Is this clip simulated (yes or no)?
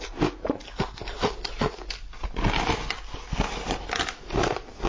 no